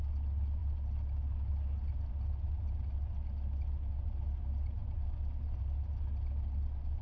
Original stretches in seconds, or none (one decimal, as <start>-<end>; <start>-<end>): 0.0-7.0